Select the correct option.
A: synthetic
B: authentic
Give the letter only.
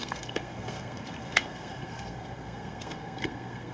A